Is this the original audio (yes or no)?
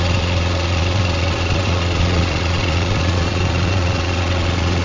no